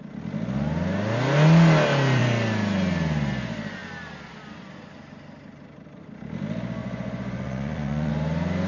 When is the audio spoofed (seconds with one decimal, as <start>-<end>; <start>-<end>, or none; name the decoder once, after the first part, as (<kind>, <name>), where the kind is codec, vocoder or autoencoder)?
6.8-8.1 (vocoder, Vocos)